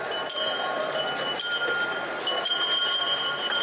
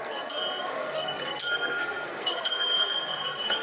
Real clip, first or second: first